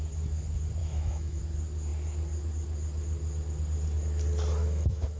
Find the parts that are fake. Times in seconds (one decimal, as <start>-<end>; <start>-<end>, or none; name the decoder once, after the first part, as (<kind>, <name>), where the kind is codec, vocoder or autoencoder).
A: 0.8-1.4 (autoencoder, DAC-VAE); 4.6-5.2